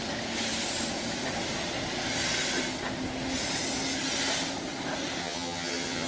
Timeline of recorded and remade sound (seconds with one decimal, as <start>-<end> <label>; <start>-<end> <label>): 0.0-5.2 recorded; 5.2-6.1 remade